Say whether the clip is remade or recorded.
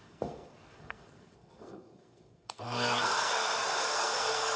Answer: remade